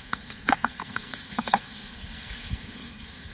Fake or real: fake